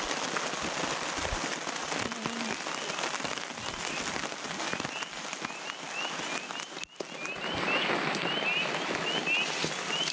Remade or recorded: recorded